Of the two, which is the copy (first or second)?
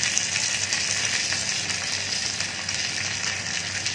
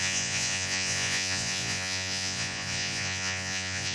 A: second